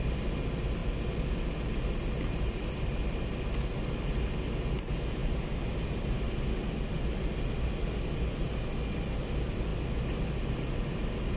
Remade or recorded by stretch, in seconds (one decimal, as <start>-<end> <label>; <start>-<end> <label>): 0.0-5.2 recorded; 5.2-6.3 remade; 6.3-11.4 recorded